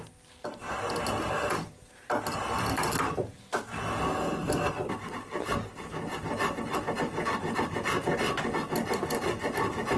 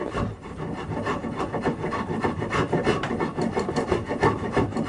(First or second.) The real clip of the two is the first